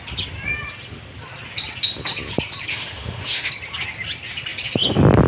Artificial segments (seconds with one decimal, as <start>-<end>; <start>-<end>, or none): 2.7-3.5